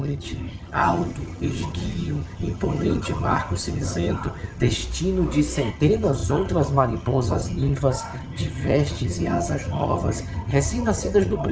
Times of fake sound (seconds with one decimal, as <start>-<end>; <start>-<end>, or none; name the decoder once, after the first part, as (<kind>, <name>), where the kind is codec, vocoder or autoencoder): 0.0-4.8 (vocoder, HiFi-GAN); 5.7-11.5